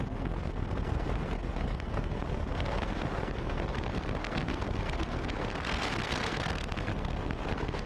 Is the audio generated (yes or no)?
yes